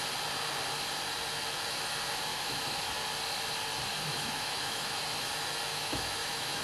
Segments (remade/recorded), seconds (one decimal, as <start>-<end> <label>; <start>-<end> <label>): 0.0-2.3 recorded; 2.3-2.9 remade; 2.9-3.9 recorded; 3.9-5.0 remade; 5.0-5.7 recorded; 5.7-6.6 remade